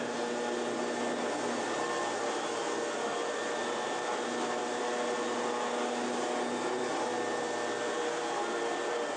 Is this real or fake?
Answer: real